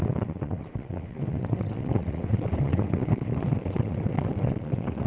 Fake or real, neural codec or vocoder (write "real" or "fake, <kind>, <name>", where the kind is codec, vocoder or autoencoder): fake, vocoder, WaveNeXt